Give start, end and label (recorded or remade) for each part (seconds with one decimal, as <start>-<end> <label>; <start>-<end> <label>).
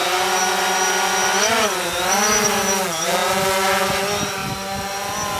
0.0-5.4 recorded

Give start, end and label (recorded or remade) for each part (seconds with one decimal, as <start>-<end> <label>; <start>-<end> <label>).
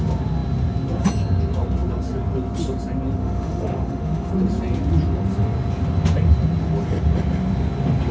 0.0-3.2 recorded; 3.2-4.3 remade; 4.3-8.1 recorded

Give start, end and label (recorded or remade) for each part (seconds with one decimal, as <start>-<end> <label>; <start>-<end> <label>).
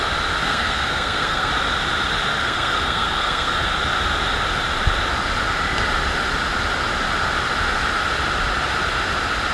0.0-0.4 recorded; 0.4-1.5 remade; 1.5-2.3 recorded; 2.3-3.7 remade; 3.7-9.5 recorded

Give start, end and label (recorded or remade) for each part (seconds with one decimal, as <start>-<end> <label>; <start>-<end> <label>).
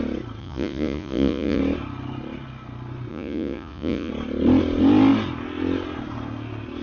0.0-0.4 recorded; 0.4-1.6 remade; 1.6-3.1 recorded; 3.1-4.1 remade; 4.1-6.8 recorded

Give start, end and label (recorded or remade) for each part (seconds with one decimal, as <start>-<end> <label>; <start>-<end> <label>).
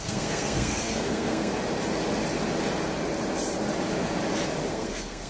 0.0-1.5 remade; 1.5-4.7 recorded; 4.7-5.3 remade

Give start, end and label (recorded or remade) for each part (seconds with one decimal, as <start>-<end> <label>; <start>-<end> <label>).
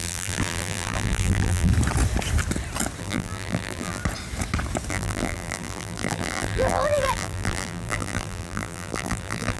0.0-1.7 remade; 1.7-3.0 recorded; 3.0-4.0 remade; 4.0-4.9 recorded; 4.9-9.6 remade